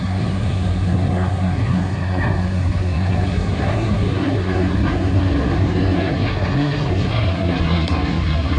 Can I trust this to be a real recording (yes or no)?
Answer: no